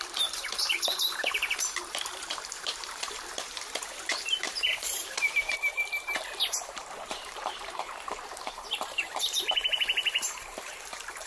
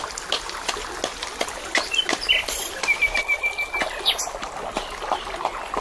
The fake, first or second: first